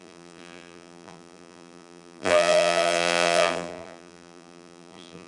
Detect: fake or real fake